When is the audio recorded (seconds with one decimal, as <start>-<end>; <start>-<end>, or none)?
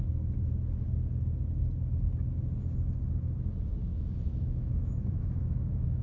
0.0-3.9